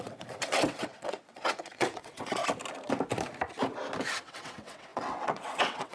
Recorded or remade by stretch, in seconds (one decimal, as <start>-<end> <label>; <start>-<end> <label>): 0.0-2.4 remade; 2.4-4.0 recorded; 4.0-5.9 remade